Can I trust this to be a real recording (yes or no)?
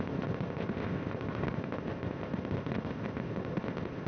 no